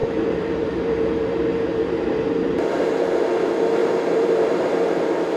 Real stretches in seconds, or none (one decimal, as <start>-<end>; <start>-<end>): 3.2-3.8; 5.0-5.4